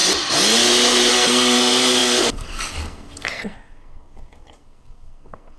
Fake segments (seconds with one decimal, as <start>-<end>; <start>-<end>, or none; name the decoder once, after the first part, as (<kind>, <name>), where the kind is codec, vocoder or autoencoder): 1.1-5.6 (codec, SNAC)